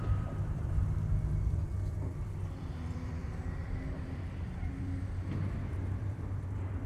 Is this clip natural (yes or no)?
no